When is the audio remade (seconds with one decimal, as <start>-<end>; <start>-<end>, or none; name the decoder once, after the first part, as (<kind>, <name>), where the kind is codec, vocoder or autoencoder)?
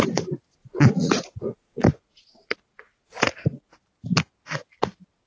0.6-3.8 (vocoder, Vocos)